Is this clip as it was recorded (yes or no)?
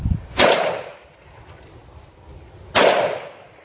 yes